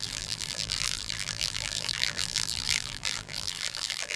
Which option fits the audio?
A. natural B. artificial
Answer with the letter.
B